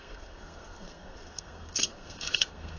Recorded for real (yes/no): no